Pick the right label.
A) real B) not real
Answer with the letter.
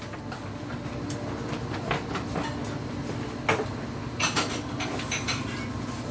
A